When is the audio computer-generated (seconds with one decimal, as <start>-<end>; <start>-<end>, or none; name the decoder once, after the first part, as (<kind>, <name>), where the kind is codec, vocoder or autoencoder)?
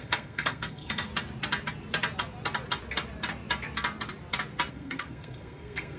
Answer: 0.0-1.1 (codec, SNAC); 4.7-6.0